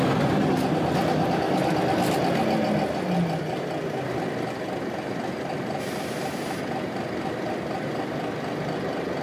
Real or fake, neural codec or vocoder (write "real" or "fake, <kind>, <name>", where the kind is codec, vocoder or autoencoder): real